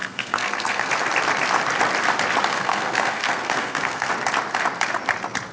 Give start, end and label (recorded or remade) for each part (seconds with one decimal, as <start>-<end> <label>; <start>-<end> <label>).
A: 0.0-0.9 remade; 0.9-2.5 recorded; 2.5-4.1 remade; 4.1-5.5 recorded